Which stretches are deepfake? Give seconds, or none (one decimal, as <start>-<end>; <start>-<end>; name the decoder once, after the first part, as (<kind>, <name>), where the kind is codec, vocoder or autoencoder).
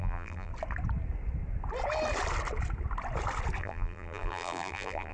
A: 0.0-0.5 (vocoder, BigVGAN v2); 3.6-5.1